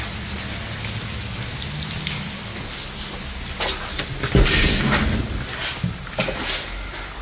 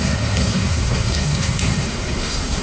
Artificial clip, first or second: second